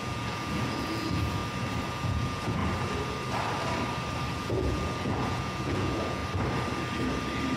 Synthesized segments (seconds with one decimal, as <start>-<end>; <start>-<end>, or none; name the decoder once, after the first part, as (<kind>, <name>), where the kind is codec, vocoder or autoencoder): 0.0-1.4 (vocoder, Vocos); 1.9-2.6; 4.3-6.2